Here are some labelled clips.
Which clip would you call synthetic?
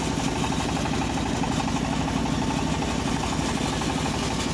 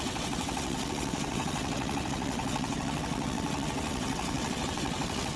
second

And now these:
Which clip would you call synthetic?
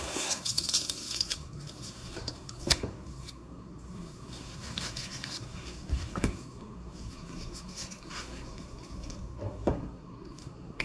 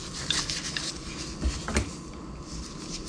first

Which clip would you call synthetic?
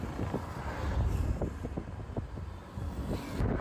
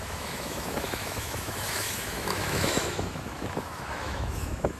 second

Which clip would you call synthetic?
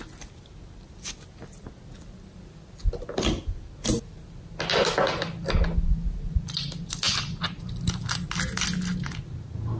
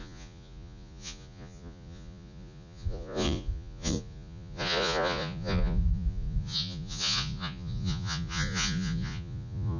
second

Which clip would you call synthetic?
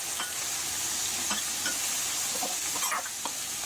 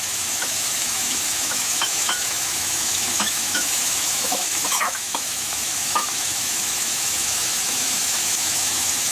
second